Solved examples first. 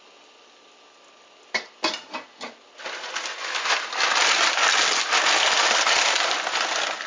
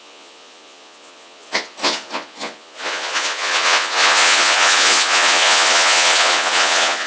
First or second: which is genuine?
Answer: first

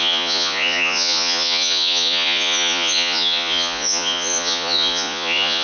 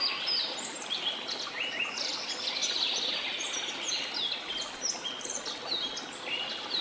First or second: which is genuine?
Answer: second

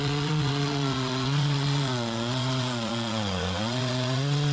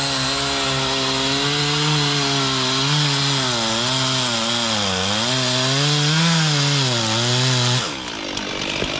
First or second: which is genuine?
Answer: second